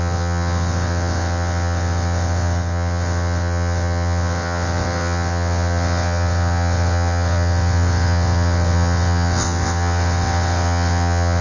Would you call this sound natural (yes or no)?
no